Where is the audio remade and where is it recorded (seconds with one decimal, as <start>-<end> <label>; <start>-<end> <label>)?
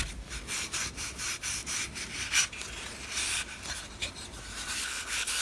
0.0-4.8 recorded; 4.8-5.4 remade